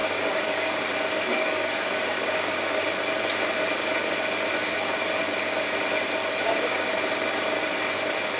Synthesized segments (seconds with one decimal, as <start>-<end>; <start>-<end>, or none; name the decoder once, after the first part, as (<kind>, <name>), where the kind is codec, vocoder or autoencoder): 0.0-0.8 (codec, DAC); 1.3-2.9; 6.2-6.9